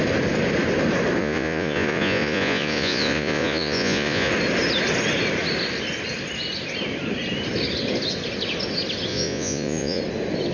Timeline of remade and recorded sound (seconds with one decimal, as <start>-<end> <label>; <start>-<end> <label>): 0.0-1.2 recorded; 1.2-4.3 remade; 4.3-9.1 recorded; 9.1-10.0 remade; 10.0-10.5 recorded